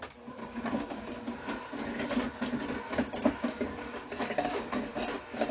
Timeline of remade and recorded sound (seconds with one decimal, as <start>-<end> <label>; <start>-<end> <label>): 0.0-0.4 recorded; 0.4-1.3 remade; 1.3-3.4 recorded; 3.4-4.7 remade; 4.7-5.5 recorded